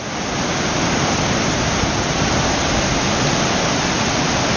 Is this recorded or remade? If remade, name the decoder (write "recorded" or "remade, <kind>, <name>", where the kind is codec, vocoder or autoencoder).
recorded